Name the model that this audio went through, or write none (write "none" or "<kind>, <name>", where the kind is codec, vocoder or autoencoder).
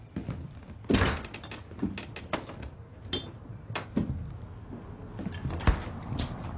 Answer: none